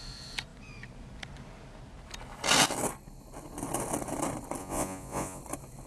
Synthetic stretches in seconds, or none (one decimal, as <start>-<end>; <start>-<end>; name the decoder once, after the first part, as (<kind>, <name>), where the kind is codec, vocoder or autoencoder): 4.6-5.4 (vocoder, Vocos)